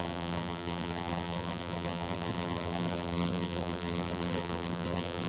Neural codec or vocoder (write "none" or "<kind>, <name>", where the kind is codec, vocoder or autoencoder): vocoder, BigVGAN v2